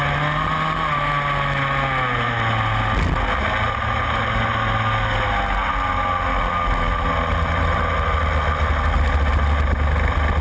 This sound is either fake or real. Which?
real